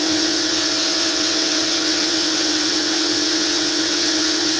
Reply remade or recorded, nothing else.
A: remade